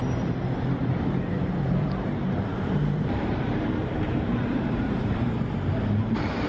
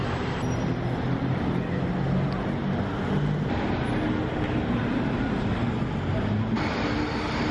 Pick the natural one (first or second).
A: second